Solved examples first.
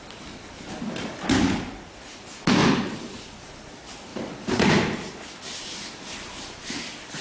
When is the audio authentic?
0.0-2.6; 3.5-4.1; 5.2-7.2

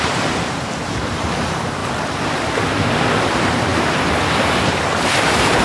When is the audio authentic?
1.8-3.2

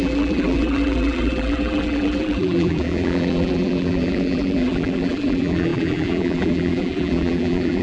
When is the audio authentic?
none

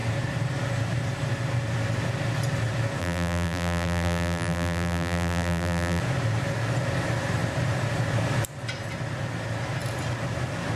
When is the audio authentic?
0.0-3.0; 6.0-10.8

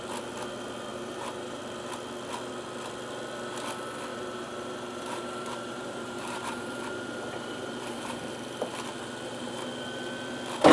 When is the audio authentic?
0.0-0.9; 1.6-4.1; 8.3-10.7

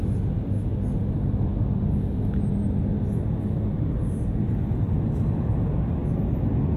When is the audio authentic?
0.0-6.8

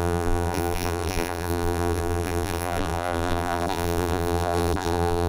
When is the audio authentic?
none

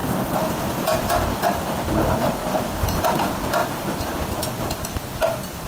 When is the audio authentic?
1.9-2.4; 3.0-3.6